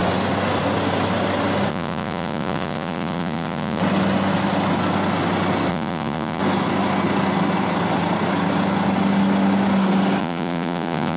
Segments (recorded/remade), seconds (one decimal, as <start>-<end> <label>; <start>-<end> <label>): 0.0-1.7 recorded; 1.7-3.8 remade; 3.8-5.7 recorded; 5.7-6.4 remade; 6.4-10.2 recorded; 10.2-11.2 remade